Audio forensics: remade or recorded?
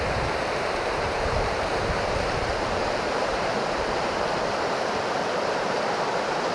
remade